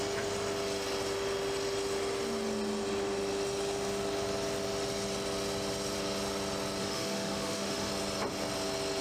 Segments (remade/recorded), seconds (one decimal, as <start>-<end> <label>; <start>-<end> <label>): 0.0-6.8 recorded; 6.8-7.9 remade; 7.9-9.0 recorded